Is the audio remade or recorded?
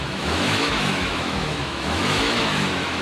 remade